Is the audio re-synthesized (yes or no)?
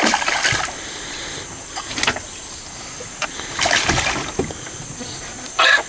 no